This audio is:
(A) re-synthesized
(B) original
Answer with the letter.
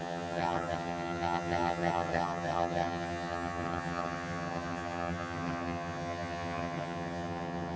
A